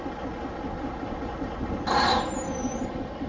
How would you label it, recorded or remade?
recorded